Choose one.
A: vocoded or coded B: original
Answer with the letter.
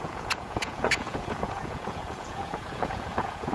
A